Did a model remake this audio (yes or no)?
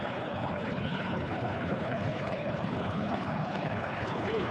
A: yes